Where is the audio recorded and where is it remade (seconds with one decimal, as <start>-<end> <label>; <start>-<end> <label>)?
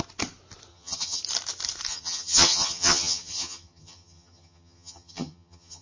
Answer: 0.0-0.7 recorded; 0.7-1.2 remade; 1.2-1.9 recorded; 1.9-5.8 remade